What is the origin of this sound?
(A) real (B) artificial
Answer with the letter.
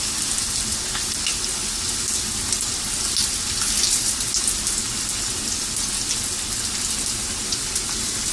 A